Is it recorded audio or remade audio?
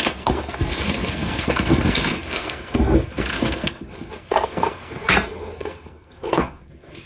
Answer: remade